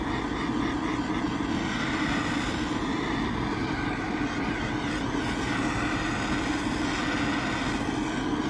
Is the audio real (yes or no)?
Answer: yes